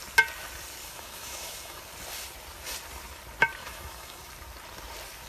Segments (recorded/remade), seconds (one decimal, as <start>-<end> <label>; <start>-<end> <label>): 0.0-0.8 recorded; 0.8-1.8 remade; 1.8-3.6 recorded; 3.6-4.3 remade; 4.3-5.3 recorded